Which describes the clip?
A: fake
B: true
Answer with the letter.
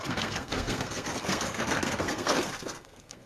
A